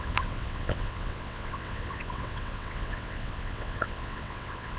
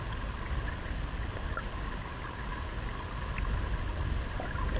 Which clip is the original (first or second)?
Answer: second